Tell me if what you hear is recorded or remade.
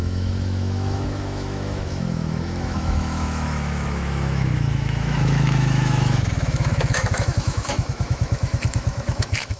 remade